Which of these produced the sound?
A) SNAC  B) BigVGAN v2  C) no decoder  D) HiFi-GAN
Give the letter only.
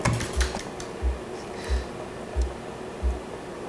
C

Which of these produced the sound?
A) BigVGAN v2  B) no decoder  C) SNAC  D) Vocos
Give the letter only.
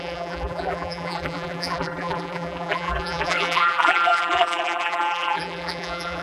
A